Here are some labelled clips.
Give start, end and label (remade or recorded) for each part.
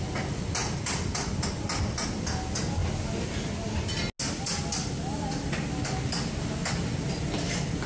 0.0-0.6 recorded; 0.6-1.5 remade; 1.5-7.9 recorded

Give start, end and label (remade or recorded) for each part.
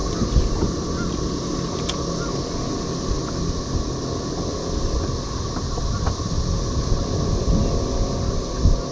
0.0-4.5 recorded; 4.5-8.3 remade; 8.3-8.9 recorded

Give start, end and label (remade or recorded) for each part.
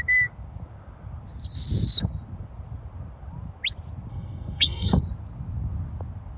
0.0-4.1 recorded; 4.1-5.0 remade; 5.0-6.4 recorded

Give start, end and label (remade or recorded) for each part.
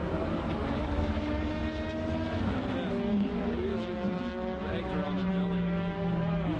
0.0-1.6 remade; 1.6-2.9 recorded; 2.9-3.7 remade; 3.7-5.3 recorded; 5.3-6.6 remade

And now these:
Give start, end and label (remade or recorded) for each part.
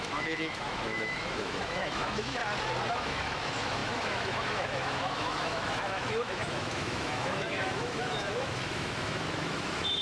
0.0-2.4 remade; 2.4-2.9 recorded; 2.9-10.0 remade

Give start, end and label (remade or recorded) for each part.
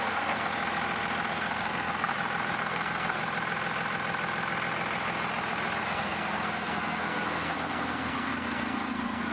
0.0-0.5 remade; 0.5-1.3 recorded; 1.3-2.1 remade; 2.1-2.6 recorded; 2.6-3.2 remade; 3.2-5.8 recorded; 5.8-9.3 remade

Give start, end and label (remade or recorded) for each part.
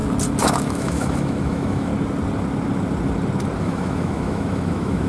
0.0-0.5 recorded; 0.5-1.9 remade; 1.9-3.6 recorded; 3.6-5.1 remade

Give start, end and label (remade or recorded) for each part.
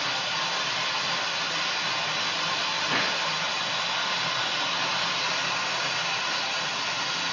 0.0-7.3 recorded